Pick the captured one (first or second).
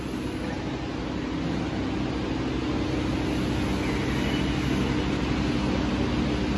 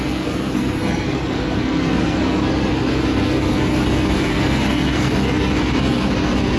first